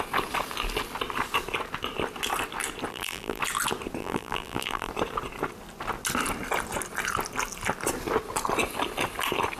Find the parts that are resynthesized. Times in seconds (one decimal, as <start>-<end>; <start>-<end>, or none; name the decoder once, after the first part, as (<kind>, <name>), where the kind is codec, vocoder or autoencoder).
2.9-3.4 (vocoder, BigVGAN v2); 4.0-4.9